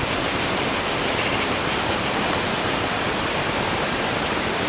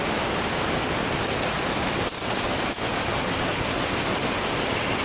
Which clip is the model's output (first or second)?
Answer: first